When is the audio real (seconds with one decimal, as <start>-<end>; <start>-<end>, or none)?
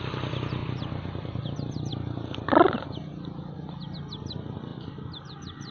0.0-5.7